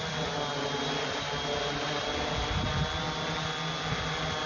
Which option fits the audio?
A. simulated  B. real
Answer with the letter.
B